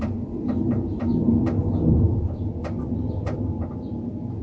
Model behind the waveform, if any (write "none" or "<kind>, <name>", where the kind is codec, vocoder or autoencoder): none